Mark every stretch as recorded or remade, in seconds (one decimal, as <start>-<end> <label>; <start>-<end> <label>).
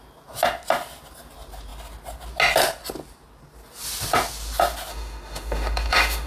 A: 0.0-4.9 recorded; 4.9-6.3 remade